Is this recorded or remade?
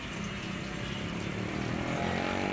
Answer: recorded